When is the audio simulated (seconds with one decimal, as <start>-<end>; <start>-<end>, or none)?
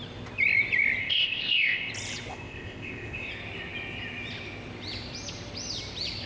1.0-1.9; 2.3-3.3